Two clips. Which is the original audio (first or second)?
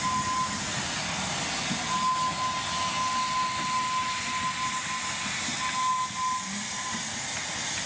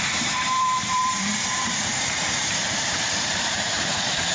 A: first